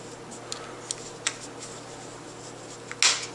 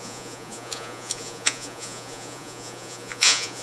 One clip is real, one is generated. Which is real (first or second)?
first